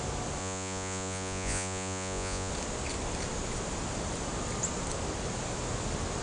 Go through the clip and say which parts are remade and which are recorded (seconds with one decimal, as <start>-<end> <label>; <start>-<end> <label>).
0.0-0.4 recorded; 0.4-2.5 remade; 2.5-6.2 recorded